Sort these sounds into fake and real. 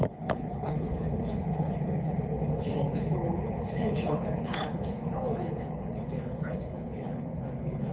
fake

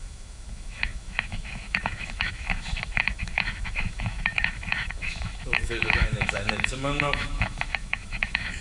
fake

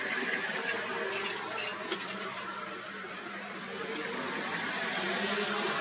real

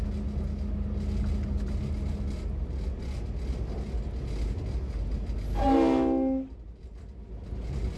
real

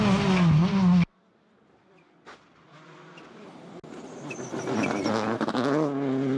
real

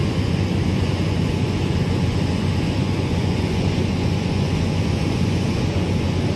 fake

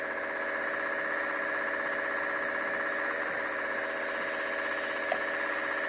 real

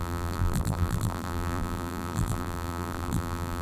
fake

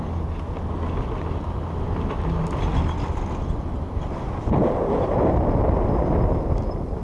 real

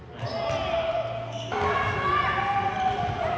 real